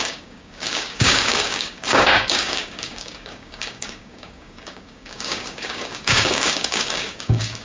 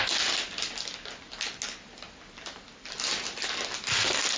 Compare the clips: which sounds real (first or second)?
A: second